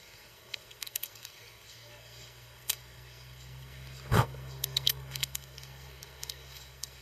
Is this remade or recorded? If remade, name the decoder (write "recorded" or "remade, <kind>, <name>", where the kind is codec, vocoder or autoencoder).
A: remade, codec, SNAC